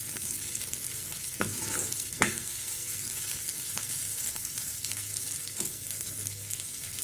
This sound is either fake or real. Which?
fake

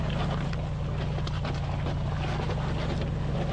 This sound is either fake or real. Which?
real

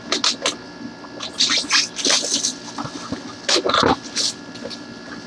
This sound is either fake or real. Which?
real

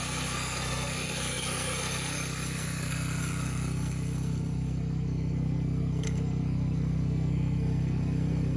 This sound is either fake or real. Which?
fake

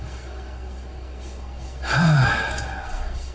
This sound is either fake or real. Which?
fake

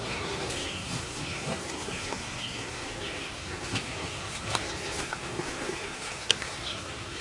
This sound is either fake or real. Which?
fake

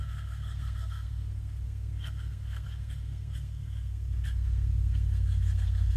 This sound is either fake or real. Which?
fake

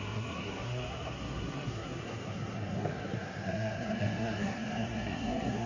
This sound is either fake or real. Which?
fake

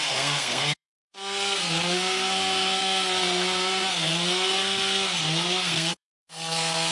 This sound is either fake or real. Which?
fake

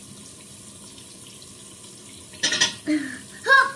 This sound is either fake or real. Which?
real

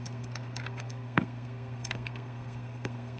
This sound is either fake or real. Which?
fake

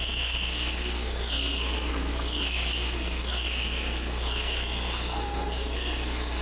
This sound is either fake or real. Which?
fake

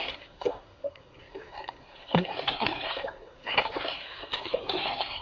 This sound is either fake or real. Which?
fake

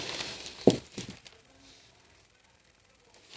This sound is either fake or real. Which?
real